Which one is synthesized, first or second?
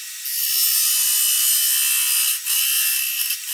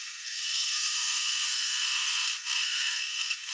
second